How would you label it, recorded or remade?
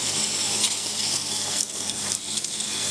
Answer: remade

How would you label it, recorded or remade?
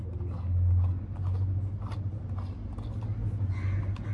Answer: recorded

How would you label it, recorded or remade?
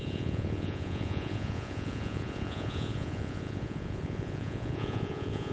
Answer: remade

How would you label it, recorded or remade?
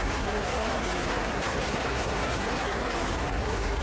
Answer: remade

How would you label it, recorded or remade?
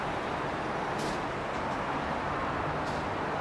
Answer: recorded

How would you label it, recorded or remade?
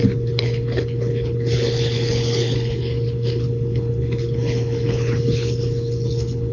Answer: remade